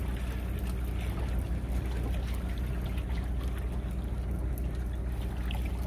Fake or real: real